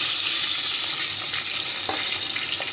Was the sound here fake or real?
real